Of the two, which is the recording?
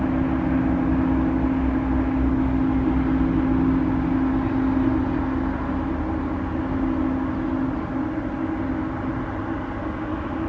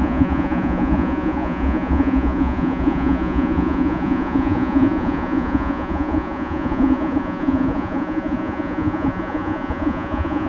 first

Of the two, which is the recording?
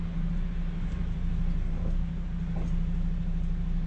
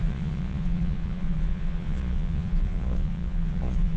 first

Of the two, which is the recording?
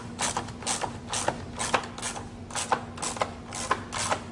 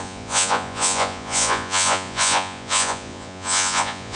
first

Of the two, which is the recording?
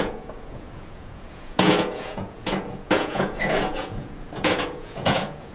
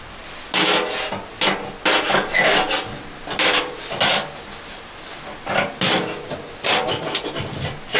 second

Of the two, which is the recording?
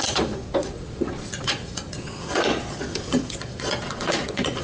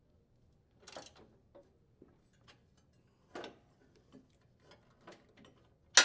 second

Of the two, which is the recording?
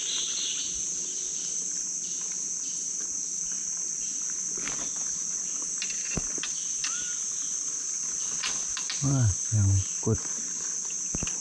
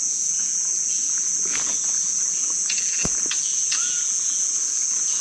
first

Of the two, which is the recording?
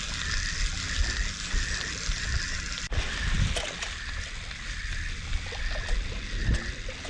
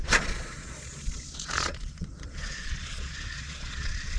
first